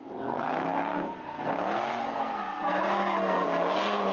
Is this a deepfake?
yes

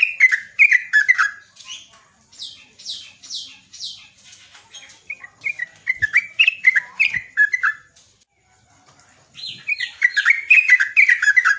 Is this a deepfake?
no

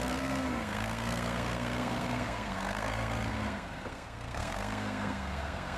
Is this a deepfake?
yes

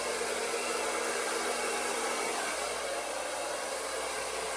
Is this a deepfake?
no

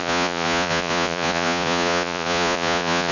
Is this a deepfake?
yes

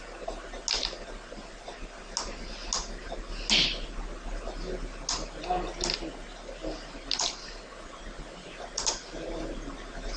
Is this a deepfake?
no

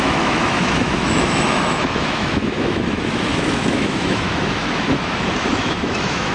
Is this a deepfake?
yes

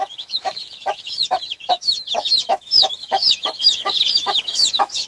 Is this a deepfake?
yes